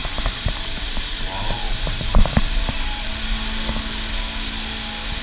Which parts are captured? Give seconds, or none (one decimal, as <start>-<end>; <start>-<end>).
3.1-5.2

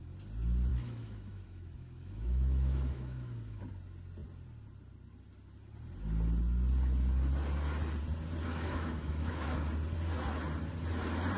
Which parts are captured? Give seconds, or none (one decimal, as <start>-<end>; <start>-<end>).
0.0-0.7; 3.6-8.4; 9.6-11.4

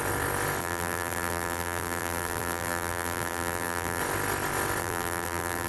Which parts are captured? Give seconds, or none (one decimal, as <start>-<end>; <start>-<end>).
0.0-0.6; 4.0-4.8